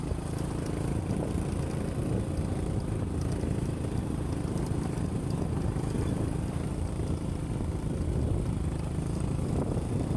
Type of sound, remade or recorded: recorded